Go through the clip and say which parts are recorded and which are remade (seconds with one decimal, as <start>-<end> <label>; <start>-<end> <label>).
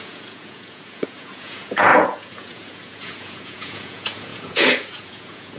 0.0-5.6 remade